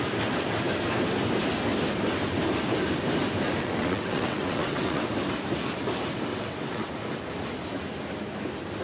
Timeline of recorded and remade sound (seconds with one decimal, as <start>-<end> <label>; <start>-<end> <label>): 0.0-3.6 recorded; 3.6-5.1 remade; 5.1-6.3 recorded; 6.3-6.9 remade; 6.9-8.8 recorded